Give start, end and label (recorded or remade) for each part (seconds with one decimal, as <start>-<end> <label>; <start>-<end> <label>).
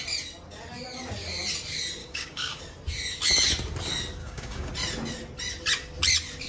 0.0-2.0 recorded; 2.0-2.6 remade; 2.6-4.2 recorded; 4.2-4.7 remade; 4.7-6.5 recorded